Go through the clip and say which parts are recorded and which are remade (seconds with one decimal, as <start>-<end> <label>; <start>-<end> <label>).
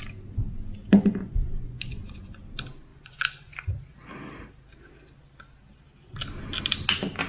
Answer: 0.0-0.8 recorded; 0.8-2.4 remade; 2.4-2.9 recorded; 2.9-3.7 remade; 3.7-7.3 recorded